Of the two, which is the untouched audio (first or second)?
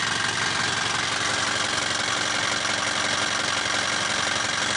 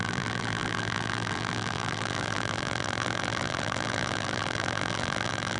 first